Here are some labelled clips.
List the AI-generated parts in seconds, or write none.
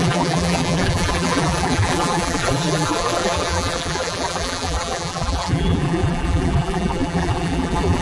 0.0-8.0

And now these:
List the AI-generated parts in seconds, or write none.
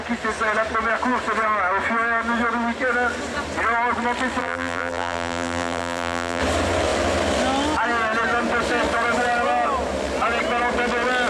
4.4-6.4